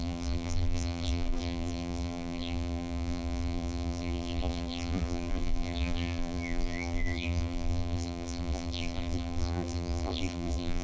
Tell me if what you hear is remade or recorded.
remade